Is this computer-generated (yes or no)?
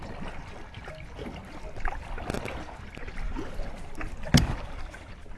no